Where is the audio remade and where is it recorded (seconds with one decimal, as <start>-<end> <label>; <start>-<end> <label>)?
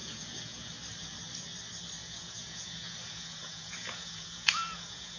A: 0.0-0.7 remade; 0.7-2.0 recorded; 2.0-5.2 remade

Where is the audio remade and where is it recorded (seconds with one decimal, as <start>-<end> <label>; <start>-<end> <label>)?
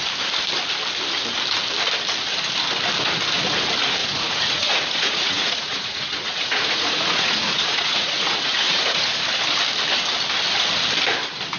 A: 0.0-4.0 recorded; 4.0-9.2 remade; 9.2-11.6 recorded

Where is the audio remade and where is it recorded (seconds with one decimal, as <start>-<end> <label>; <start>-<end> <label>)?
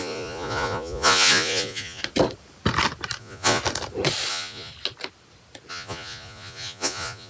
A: 0.0-2.0 remade; 2.0-3.2 recorded; 3.2-3.6 remade; 3.6-4.3 recorded; 4.3-4.7 remade; 4.7-5.7 recorded; 5.7-7.3 remade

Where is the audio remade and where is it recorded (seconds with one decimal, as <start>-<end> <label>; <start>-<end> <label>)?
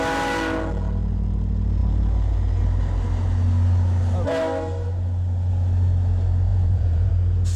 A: 0.0-6.5 recorded; 6.5-7.1 remade; 7.1-7.6 recorded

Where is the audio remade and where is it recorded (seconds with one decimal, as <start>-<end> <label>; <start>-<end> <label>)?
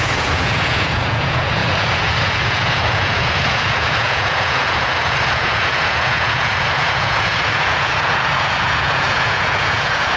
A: 0.0-10.2 remade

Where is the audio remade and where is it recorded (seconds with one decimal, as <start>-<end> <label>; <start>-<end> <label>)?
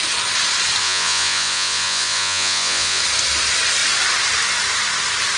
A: 0.0-0.8 recorded; 0.8-3.0 remade; 3.0-5.4 recorded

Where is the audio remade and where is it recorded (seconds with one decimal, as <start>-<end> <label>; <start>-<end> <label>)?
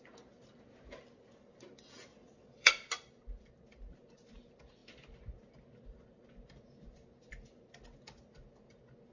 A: 0.0-2.1 recorded; 2.1-2.7 remade; 2.7-9.1 recorded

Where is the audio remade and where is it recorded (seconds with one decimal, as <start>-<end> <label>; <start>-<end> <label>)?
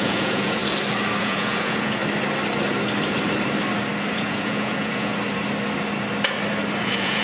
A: 0.0-0.6 remade; 0.6-1.2 recorded; 1.2-2.0 remade; 2.0-4.0 recorded; 4.0-5.1 remade; 5.1-6.8 recorded; 6.8-7.2 remade